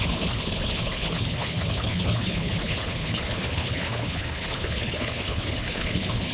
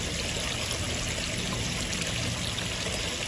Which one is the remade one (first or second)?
first